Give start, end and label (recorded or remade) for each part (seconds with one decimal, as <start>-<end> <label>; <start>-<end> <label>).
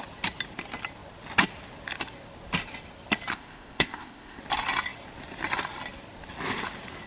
0.0-3.3 recorded; 3.3-4.4 remade; 4.4-7.1 recorded